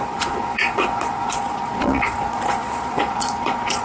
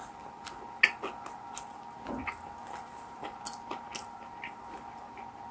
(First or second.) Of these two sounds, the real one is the second